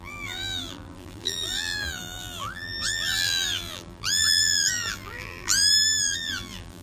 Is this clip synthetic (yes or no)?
yes